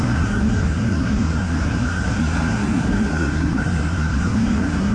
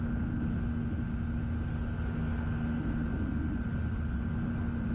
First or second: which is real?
second